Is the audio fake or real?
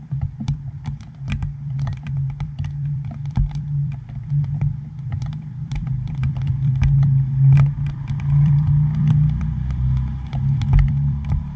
fake